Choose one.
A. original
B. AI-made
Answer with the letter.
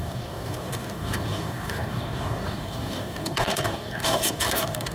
B